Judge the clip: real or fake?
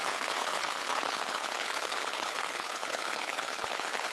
fake